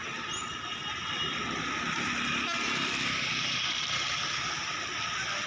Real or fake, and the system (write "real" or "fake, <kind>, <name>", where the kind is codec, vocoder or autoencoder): real